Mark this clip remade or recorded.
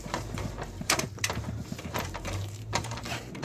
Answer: remade